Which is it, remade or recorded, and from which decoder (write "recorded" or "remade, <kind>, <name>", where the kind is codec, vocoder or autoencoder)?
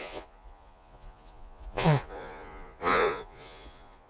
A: remade, vocoder, Vocos